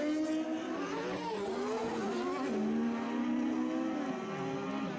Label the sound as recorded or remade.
recorded